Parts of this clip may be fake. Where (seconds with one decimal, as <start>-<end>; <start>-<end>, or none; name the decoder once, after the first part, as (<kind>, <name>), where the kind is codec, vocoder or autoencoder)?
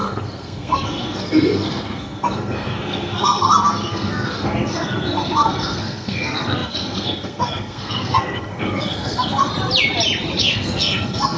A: 0.0-9.5 (codec, SNAC); 10.4-11.4